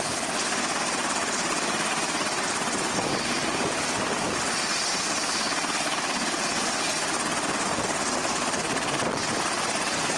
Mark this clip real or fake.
real